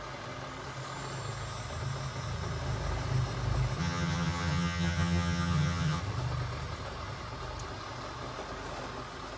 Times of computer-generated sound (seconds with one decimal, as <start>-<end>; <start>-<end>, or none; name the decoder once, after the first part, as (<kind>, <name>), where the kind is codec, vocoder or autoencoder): 3.8-6.0 (vocoder, HiFi-GAN)